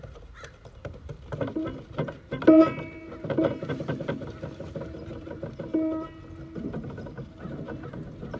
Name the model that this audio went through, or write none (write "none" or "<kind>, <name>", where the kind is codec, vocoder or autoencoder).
none